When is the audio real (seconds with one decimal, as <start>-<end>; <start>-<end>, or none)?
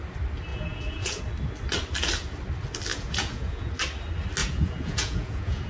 0.0-0.5; 1.2-2.9; 3.7-4.4